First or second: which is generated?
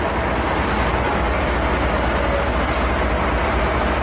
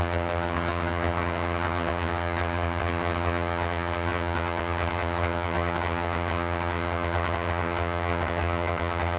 second